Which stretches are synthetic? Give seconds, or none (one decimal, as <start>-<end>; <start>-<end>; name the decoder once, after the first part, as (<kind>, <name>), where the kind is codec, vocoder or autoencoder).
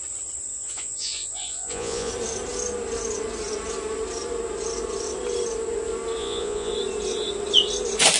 0.5-2.1 (vocoder, Vocos); 6.2-6.7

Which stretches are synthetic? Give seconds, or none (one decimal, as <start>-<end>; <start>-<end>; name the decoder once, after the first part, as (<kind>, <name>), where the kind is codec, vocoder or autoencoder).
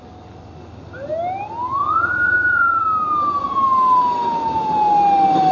1.8-2.8 (vocoder, Vocos)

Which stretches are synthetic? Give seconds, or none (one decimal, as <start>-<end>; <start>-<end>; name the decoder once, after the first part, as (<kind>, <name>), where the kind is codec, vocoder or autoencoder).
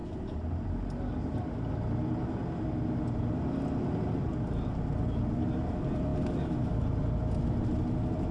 none